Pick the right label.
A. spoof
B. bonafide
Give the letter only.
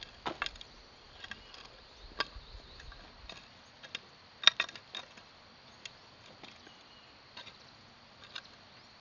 B